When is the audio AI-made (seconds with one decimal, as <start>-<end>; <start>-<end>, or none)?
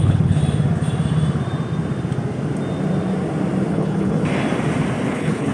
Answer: 0.0-0.4; 3.7-4.2; 5.1-5.5